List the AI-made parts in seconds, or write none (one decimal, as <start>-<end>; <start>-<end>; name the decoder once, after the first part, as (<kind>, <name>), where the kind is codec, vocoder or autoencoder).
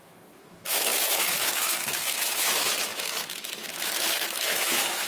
0.0-5.1 (autoencoder, DAC-VAE)